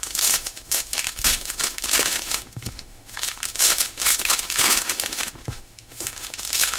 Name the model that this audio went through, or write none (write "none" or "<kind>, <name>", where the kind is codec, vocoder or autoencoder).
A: autoencoder, DAC-VAE